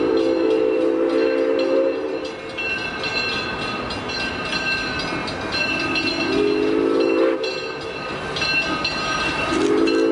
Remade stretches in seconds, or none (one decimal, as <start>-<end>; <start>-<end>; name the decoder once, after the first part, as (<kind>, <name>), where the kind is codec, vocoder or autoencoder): none